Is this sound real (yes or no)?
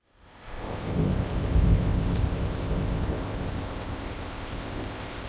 no